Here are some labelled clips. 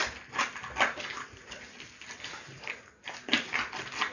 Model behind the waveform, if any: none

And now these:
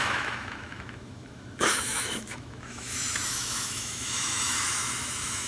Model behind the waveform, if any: autoencoder, DAC-VAE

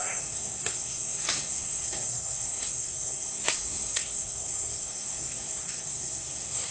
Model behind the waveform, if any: codec, SNAC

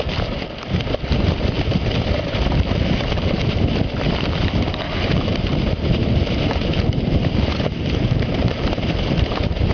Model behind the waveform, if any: vocoder, BigVGAN v2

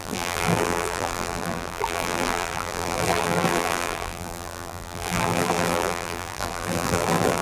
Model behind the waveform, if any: vocoder, BigVGAN v2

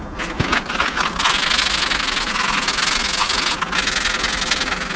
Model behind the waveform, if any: none